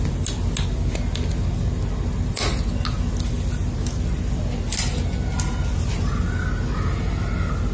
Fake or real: real